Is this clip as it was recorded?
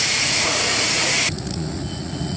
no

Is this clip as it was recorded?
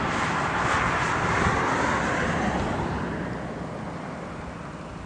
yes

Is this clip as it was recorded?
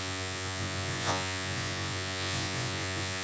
no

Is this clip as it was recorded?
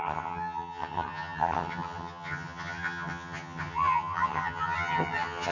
no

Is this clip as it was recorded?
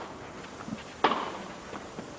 yes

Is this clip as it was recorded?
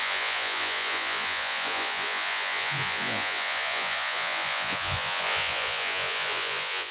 no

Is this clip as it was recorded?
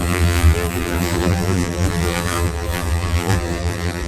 no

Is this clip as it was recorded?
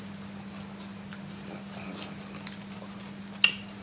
yes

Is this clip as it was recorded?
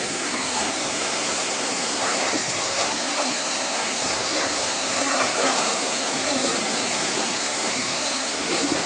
no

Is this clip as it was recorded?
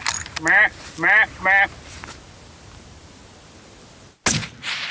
yes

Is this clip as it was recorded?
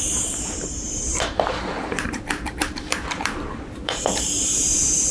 no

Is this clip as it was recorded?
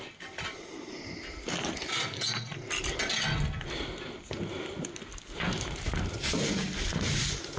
yes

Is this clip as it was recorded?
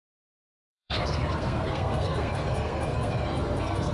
no